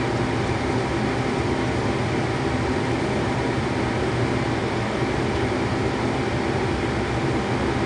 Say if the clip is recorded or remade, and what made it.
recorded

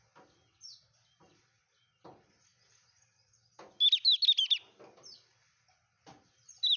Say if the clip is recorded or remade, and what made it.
recorded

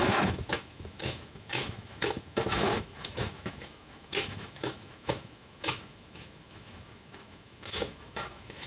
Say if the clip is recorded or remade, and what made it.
remade, autoencoder, DAC-VAE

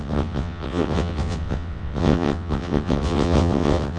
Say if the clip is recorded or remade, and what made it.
remade, vocoder, WaveNeXt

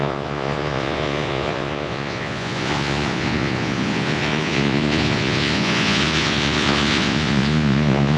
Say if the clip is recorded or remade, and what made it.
remade, vocoder, Vocos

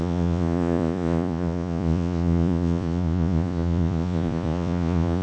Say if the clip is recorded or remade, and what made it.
remade, vocoder, Vocos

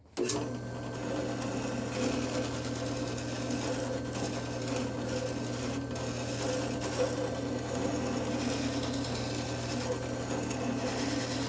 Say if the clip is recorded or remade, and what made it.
recorded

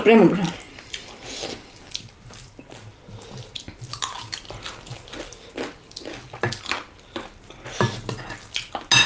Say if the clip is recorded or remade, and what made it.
recorded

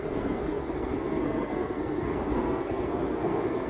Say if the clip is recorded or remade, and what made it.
remade, codec, SNAC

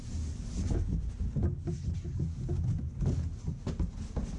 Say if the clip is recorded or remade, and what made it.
recorded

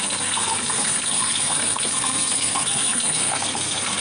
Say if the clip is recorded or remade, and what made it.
remade, codec, SNAC